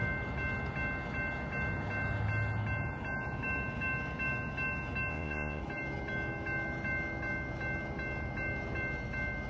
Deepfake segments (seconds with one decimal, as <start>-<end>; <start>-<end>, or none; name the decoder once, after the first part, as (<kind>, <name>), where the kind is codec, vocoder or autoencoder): 5.1-5.6 (vocoder, Vocos)